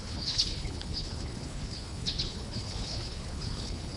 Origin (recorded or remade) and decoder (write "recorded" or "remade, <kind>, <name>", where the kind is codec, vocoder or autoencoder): remade, codec, HILCodec